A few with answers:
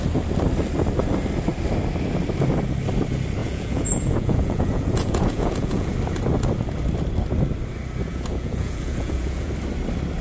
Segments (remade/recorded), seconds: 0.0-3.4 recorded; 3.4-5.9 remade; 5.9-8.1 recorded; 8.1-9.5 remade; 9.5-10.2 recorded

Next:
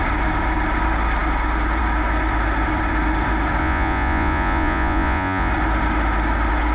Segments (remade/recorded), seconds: 0.0-3.6 recorded; 3.6-5.5 remade; 5.5-6.7 recorded

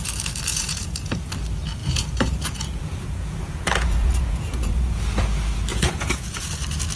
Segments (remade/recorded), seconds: 0.0-0.5 recorded; 0.5-1.3 remade; 1.3-1.8 recorded; 1.8-5.0 remade; 5.0-5.7 recorded; 5.7-6.5 remade; 6.5-7.0 recorded

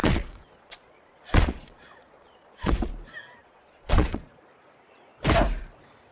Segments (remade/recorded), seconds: 0.0-2.9 remade; 2.9-3.4 recorded; 3.4-4.4 remade; 4.4-6.1 recorded

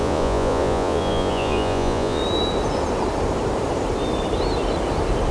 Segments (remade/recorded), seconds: 0.0-2.2 remade; 2.2-5.3 recorded

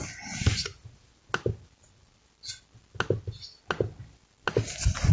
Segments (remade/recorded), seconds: 0.0-5.1 recorded

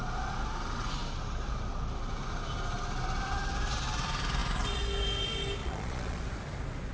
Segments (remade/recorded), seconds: 0.0-5.6 recorded; 5.6-6.2 remade; 6.2-6.9 recorded